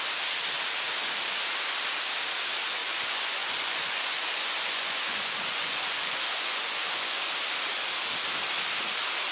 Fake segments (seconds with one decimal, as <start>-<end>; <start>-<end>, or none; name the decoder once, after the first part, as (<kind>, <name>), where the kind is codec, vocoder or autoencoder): 2.8-7.2 (vocoder, Vocos)